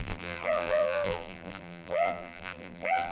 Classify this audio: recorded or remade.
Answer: remade